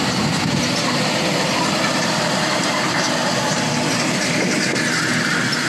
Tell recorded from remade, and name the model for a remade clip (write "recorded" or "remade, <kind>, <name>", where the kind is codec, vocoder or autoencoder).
remade, vocoder, BigVGAN v2